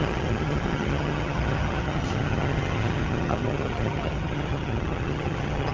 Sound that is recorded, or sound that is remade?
remade